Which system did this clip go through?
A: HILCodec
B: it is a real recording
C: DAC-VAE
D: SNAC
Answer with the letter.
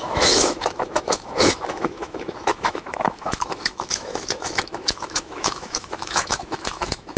C